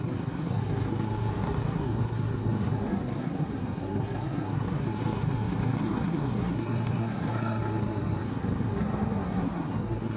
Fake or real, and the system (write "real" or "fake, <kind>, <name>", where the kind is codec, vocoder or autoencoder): fake, codec, SNAC